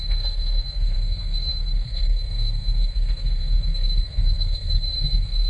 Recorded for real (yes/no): no